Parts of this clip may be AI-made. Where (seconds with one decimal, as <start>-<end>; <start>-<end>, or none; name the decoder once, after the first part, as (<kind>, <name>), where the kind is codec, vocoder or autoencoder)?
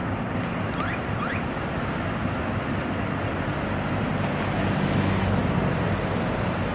none